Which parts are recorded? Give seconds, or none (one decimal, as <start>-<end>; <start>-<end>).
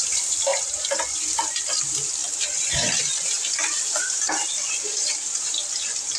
0.0-6.2